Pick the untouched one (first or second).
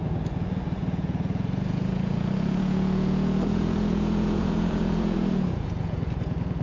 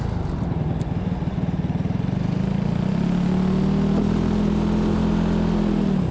second